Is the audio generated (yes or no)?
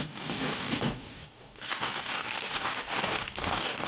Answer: yes